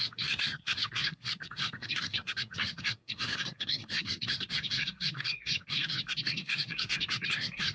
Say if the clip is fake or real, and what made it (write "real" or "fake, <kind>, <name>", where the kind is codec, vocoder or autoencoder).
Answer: fake, codec, SNAC